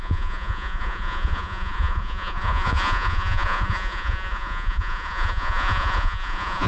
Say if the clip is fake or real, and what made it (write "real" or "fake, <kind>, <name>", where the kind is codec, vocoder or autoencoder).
fake, vocoder, Vocos